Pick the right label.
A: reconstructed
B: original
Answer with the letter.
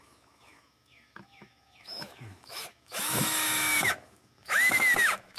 A